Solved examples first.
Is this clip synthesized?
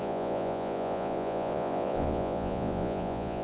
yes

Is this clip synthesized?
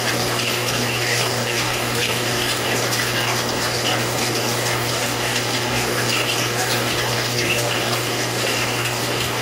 yes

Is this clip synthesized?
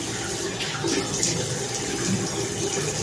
no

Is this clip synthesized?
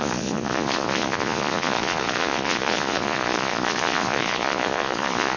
yes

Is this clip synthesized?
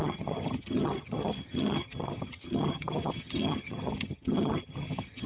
yes